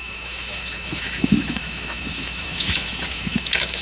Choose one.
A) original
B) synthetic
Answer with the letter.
B